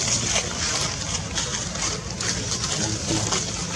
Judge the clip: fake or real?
real